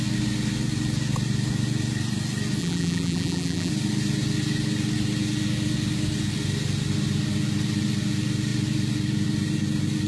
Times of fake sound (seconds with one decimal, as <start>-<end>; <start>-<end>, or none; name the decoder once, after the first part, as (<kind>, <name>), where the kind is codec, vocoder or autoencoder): 2.6-3.7 (vocoder, BigVGAN v2)